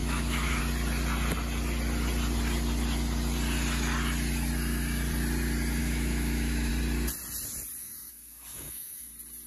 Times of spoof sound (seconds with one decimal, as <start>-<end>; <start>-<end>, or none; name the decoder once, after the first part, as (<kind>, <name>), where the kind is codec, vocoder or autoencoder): 0.0-0.6 (autoencoder, DAC-VAE); 5.8-6.7; 7.8-9.1